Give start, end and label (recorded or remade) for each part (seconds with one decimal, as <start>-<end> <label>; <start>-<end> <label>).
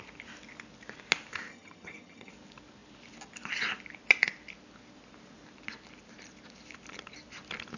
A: 0.0-1.5 recorded; 1.5-2.3 remade; 2.3-7.8 recorded